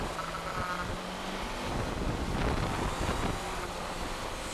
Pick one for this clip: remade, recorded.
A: recorded